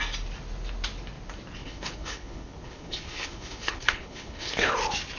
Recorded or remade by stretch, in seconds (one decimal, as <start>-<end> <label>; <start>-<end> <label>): 0.0-1.6 recorded; 1.6-4.7 remade; 4.7-5.2 recorded